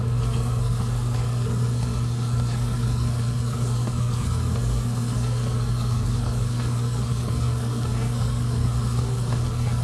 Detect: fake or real fake